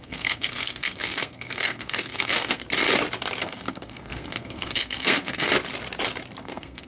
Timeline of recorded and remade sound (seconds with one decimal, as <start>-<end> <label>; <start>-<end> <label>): 0.0-2.6 remade; 2.6-3.4 recorded; 3.4-5.5 remade; 5.5-6.4 recorded; 6.4-6.9 remade